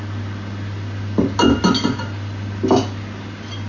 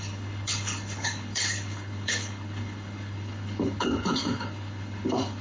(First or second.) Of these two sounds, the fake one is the second